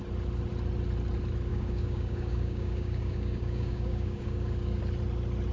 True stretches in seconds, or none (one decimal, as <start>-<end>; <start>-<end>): 0.0-1.5; 4.8-5.5